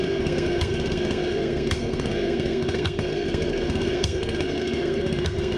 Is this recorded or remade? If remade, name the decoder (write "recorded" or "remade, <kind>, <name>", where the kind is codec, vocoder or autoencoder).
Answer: remade, codec, SNAC